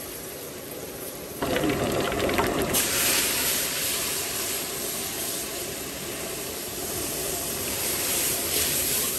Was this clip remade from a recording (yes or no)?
yes